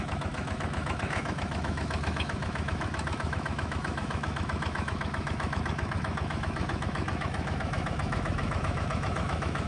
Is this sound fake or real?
fake